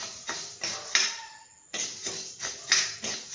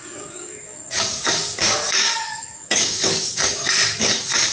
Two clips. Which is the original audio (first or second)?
first